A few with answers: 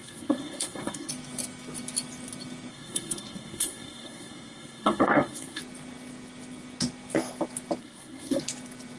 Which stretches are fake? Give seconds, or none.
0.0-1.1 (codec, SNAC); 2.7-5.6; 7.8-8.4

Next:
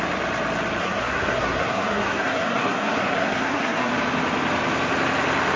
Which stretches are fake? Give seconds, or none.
0.8-3.9 (codec, SNAC)

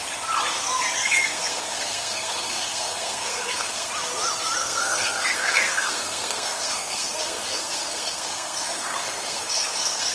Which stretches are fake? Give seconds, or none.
1.0-3.9 (codec, SNAC); 4.6-10.1

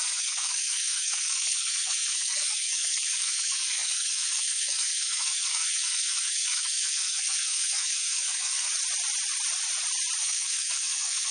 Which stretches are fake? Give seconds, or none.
0.0-8.7 (codec, SNAC); 10.2-11.3

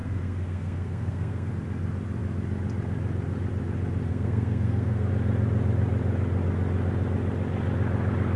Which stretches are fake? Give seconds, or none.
0.0-1.5 (codec, SNAC); 4.1-5.1

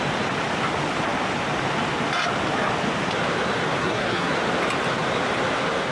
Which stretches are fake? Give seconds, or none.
3.8-4.3 (codec, SNAC)

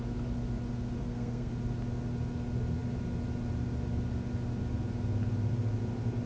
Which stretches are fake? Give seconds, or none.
1.0-1.5 (codec, SNAC)